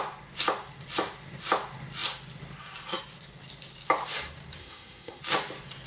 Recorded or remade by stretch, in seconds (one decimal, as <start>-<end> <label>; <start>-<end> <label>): 0.0-4.6 recorded; 4.6-5.2 remade; 5.2-5.9 recorded